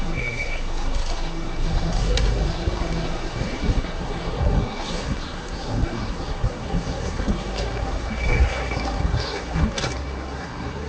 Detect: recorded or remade remade